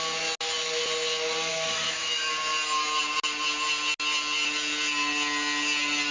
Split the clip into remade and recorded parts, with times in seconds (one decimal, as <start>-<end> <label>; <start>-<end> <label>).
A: 0.0-1.5 recorded; 1.5-2.3 remade; 2.3-6.1 recorded